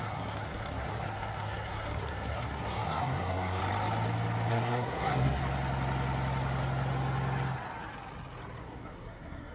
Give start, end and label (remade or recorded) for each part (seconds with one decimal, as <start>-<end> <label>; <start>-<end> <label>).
0.0-3.6 remade; 3.6-4.5 recorded; 4.5-5.4 remade; 5.4-8.6 recorded; 8.6-9.5 remade